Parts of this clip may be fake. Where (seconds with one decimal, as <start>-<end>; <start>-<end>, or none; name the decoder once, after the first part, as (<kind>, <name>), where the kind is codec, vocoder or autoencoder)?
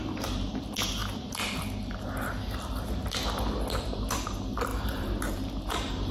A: 0.0-1.0 (vocoder, BigVGAN v2); 3.8-6.1